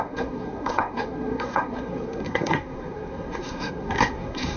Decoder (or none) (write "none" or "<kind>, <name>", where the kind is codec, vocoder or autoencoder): codec, SNAC